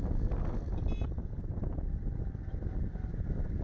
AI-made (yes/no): no